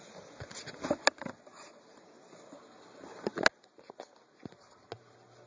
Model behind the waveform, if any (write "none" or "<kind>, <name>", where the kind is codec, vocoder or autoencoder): none